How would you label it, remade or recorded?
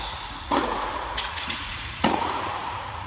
remade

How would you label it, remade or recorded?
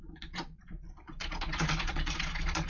remade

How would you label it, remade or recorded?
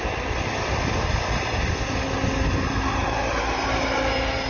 recorded